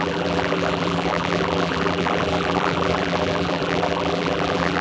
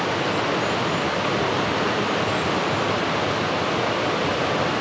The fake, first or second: first